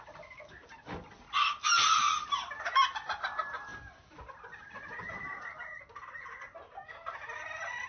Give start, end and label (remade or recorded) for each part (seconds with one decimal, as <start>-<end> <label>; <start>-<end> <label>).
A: 0.0-7.9 recorded